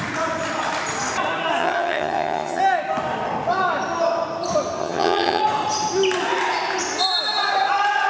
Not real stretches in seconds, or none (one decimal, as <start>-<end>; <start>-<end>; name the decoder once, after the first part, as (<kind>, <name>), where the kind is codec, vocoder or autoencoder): 1.6-2.6 (vocoder, HiFi-GAN); 4.8-5.4